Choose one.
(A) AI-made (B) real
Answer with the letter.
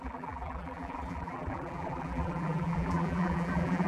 A